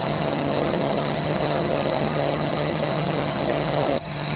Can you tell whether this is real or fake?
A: fake